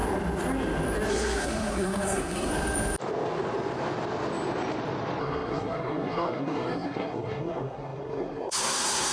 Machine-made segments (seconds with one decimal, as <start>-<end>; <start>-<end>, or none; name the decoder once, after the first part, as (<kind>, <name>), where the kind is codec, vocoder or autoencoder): 1.1-2.5 (codec, SNAC); 5.2-9.1